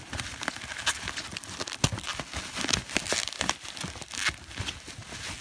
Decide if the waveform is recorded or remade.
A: recorded